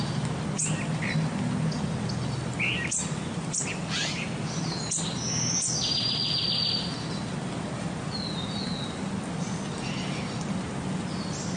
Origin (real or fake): real